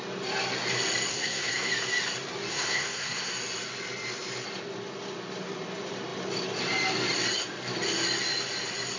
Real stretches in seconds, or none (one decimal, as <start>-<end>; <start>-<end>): 0.0-1.1; 1.7-2.5; 3.3-9.0